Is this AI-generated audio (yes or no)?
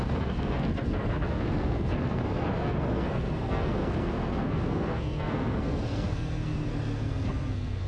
yes